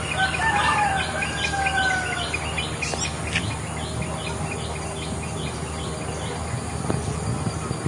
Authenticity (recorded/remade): recorded